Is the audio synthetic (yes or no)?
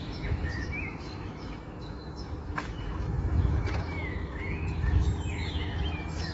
yes